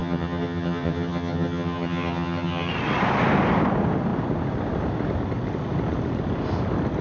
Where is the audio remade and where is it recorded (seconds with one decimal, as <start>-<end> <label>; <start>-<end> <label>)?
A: 0.0-2.7 remade; 2.7-7.0 recorded